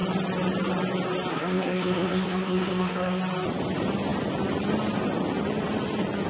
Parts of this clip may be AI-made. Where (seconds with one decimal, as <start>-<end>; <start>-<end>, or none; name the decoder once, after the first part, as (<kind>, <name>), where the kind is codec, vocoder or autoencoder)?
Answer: 1.3-3.2 (codec, SNAC)